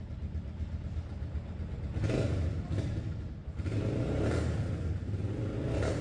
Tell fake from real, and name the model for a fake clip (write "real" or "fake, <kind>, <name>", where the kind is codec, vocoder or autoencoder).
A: real